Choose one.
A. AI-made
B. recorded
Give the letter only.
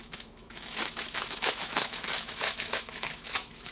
A